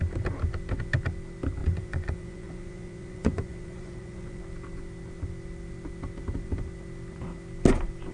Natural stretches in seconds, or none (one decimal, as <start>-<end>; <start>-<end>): 0.0-1.6; 4.4-8.1